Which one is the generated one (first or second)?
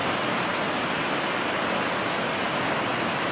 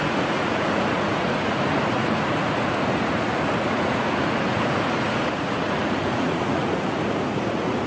second